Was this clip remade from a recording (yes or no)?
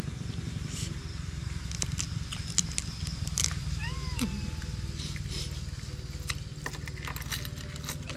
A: no